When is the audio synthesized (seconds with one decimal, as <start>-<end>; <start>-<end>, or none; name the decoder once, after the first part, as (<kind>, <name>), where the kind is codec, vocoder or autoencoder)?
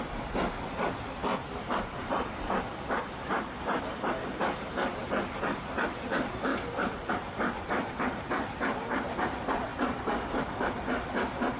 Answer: 0.0-9.7 (vocoder, BigVGAN v2); 10.5-11.6